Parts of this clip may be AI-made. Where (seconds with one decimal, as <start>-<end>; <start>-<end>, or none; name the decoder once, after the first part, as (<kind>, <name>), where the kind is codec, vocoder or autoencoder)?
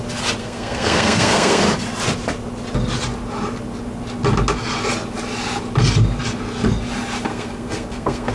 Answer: 0.4-1.6 (codec, SNAC); 7.3-8.3